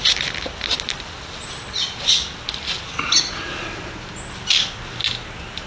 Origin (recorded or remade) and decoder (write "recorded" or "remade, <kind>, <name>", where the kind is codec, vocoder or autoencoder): recorded